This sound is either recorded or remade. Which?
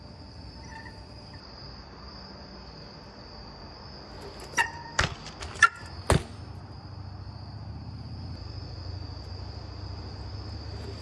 recorded